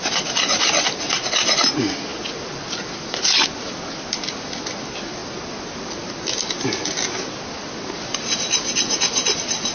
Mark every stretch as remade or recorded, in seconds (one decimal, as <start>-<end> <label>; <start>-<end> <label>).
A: 0.0-9.7 recorded